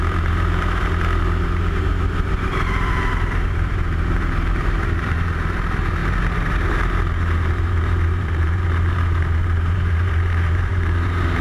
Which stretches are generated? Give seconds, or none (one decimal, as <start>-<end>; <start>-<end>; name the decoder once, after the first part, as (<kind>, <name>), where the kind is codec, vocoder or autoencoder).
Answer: 0.0-11.4 (vocoder, BigVGAN v2)